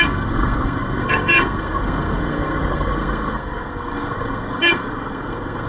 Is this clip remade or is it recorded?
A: remade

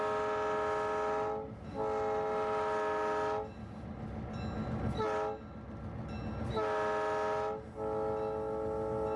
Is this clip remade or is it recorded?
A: recorded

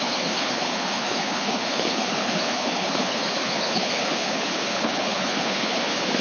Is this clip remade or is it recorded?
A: remade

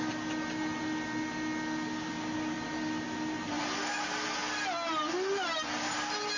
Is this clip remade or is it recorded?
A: recorded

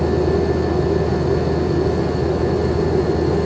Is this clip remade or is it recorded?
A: recorded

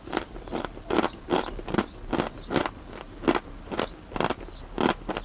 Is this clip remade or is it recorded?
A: recorded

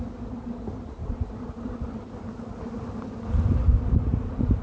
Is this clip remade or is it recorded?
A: recorded